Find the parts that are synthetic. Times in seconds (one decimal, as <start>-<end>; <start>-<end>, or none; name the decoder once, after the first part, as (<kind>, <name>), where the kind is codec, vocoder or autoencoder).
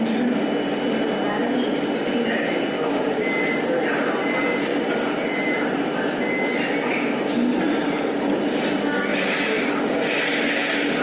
4.7-6.2 (vocoder, BigVGAN v2); 9.1-9.8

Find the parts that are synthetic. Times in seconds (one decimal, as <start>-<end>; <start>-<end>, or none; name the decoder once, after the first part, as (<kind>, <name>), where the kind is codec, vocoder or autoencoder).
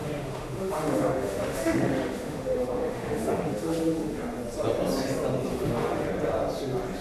0.0-4.2 (autoencoder, DAC-VAE); 5.5-6.1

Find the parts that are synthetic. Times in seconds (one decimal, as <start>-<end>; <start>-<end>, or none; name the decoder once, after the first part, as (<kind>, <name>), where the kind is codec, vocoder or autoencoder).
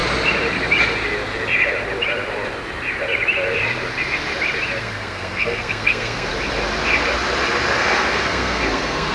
4.8-6.3 (codec, SNAC); 7.8-9.1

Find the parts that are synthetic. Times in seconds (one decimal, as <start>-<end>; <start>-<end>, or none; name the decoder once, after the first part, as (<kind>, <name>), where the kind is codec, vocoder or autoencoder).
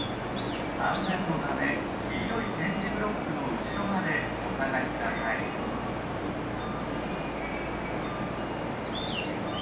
0.0-2.5 (vocoder, Vocos)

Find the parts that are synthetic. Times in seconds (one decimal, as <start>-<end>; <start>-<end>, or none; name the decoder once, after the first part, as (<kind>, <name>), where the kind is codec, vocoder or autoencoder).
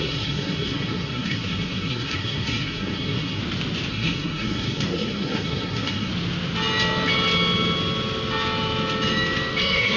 0.0-3.4 (codec, SNAC); 3.9-6.1; 9.6-10.0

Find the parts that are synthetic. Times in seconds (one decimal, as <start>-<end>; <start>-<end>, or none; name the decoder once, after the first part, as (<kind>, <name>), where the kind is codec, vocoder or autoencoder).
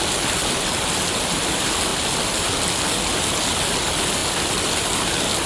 none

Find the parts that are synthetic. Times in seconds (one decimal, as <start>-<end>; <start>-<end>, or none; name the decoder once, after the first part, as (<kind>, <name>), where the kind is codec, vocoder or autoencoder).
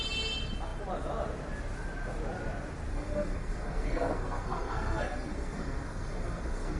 2.9-6.8 (codec, SNAC)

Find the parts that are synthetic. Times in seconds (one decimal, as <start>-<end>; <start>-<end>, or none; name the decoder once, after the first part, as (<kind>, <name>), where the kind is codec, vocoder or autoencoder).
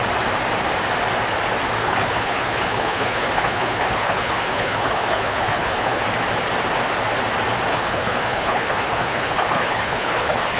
1.8-6.0 (codec, HILCodec); 7.7-10.6